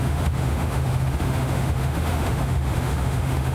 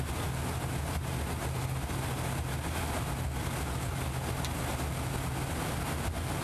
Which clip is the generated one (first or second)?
first